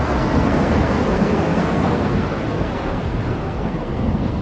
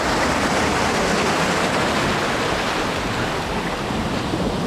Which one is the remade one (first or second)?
first